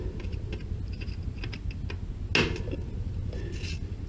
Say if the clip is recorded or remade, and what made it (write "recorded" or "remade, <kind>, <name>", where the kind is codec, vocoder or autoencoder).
recorded